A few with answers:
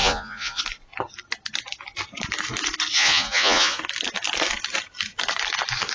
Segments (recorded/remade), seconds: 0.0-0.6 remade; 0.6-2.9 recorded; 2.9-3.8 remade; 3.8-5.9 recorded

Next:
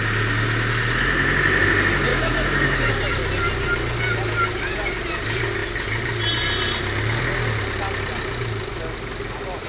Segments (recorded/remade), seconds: 0.0-2.1 recorded; 2.1-2.9 remade; 2.9-9.7 recorded

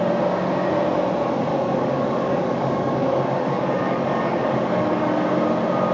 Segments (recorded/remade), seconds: 0.0-1.5 recorded; 1.5-5.0 remade; 5.0-5.9 recorded

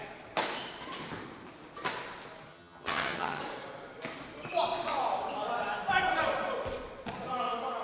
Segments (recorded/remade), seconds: 0.0-2.5 recorded; 2.5-3.4 remade; 3.4-7.8 recorded

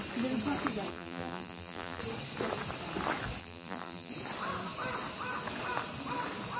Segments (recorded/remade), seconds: 0.0-0.9 recorded; 0.9-2.0 remade; 2.0-3.4 recorded; 3.4-4.1 remade; 4.1-6.6 recorded

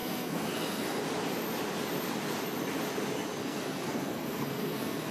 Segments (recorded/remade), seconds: 0.0-1.0 remade; 1.0-3.4 recorded; 3.4-5.1 remade

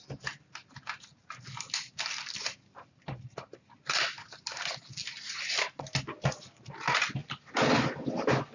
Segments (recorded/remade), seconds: 0.0-8.5 recorded